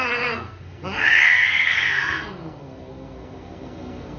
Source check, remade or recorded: remade